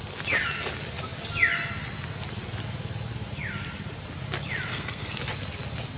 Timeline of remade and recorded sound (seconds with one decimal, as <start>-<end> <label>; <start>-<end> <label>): 0.0-4.7 recorded; 4.7-5.2 remade; 5.2-6.0 recorded